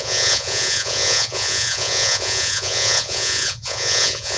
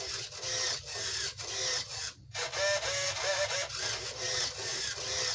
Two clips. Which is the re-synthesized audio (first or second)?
first